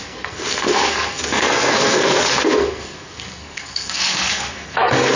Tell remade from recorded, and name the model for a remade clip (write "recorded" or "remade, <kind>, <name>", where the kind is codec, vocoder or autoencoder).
remade, codec, SNAC